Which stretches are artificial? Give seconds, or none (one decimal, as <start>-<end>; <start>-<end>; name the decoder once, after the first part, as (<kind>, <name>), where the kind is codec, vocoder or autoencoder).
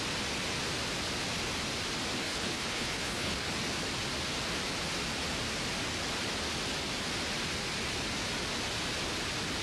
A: 2.2-3.5 (codec, HILCodec)